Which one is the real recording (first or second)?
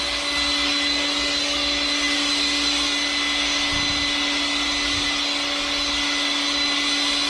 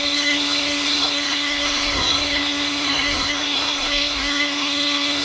first